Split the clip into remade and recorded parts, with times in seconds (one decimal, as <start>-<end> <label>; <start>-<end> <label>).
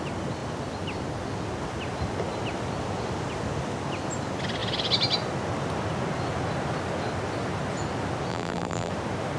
0.0-8.3 recorded; 8.3-8.9 remade; 8.9-9.4 recorded